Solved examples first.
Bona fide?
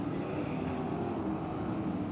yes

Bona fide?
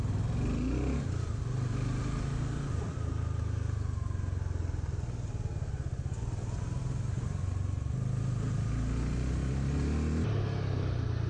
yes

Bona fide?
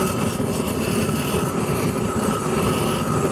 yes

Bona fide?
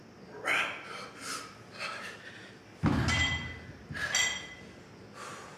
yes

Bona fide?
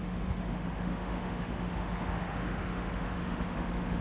no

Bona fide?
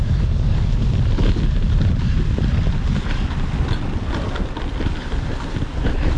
yes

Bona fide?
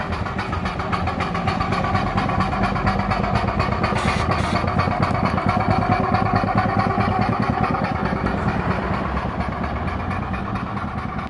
yes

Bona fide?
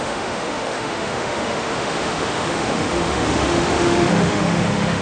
no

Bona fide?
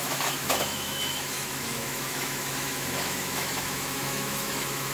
no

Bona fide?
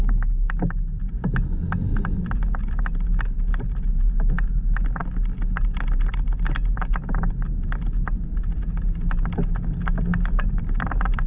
yes